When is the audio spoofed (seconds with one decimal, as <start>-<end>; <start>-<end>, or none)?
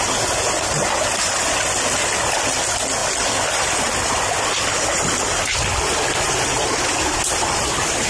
none